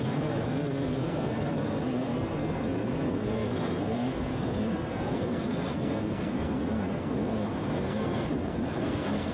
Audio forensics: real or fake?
fake